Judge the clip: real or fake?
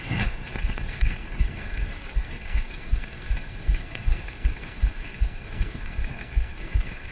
fake